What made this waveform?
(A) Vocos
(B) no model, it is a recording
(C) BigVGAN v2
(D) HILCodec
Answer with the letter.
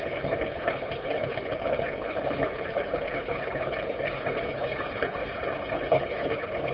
D